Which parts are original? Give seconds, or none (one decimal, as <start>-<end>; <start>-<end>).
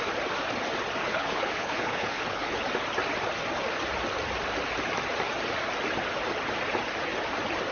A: 0.0-1.0; 2.6-7.7